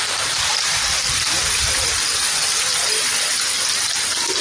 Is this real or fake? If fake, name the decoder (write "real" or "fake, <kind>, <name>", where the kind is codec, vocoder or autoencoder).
fake, vocoder, BigVGAN v2